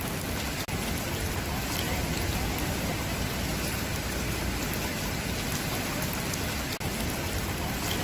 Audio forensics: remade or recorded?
recorded